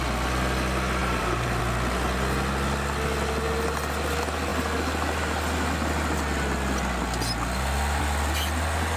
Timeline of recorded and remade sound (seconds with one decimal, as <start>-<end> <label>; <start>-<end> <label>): 0.0-1.0 recorded; 1.0-1.6 remade; 1.6-9.0 recorded

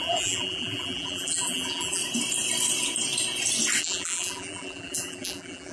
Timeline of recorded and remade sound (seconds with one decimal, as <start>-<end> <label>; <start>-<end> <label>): 0.0-2.0 remade; 2.0-3.8 recorded; 3.8-5.7 remade

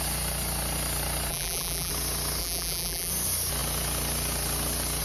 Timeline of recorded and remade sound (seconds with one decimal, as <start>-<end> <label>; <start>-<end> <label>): 0.0-1.3 recorded; 1.3-1.9 remade; 1.9-2.4 recorded; 2.4-3.1 remade; 3.1-5.0 recorded

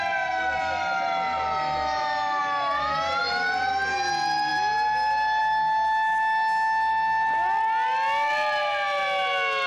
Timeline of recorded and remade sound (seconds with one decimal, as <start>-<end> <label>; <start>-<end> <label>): 0.0-9.7 recorded

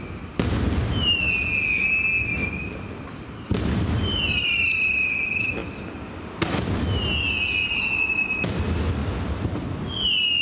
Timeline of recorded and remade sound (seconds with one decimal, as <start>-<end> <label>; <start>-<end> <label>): 0.0-0.8 recorded; 0.8-1.4 remade; 1.4-2.4 recorded; 2.4-4.6 remade; 4.6-5.6 recorded; 5.6-6.6 remade; 6.6-9.0 recorded; 9.0-9.6 remade; 9.6-10.4 recorded